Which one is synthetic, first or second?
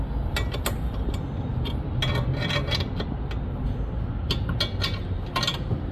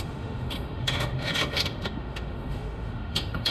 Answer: second